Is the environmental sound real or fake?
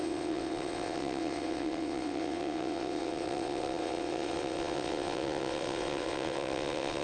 fake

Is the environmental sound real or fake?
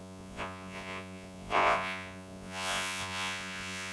fake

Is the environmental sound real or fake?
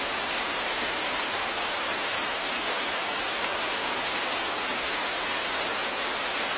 real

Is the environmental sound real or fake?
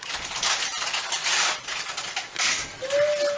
real